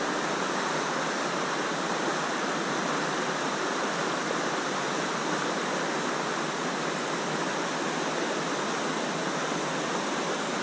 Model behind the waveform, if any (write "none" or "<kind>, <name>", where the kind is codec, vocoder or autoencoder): none